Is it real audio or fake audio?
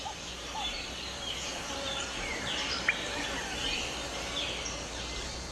fake